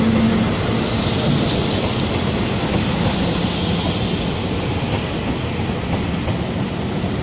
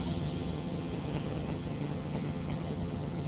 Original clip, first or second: first